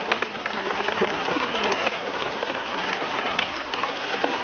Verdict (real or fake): fake